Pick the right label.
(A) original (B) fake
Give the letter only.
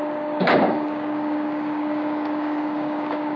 B